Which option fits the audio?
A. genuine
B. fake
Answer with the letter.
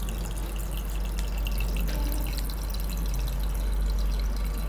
A